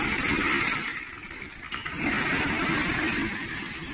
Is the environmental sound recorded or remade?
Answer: recorded